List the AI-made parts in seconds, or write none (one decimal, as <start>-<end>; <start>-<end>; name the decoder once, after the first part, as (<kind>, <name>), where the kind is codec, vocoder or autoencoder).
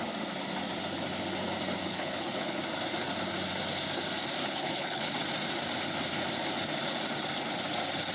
1.8-2.6 (codec, HILCodec); 4.4-5.1